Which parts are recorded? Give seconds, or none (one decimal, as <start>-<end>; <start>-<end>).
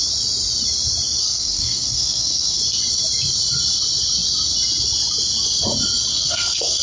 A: 0.0-1.2; 2.6-6.1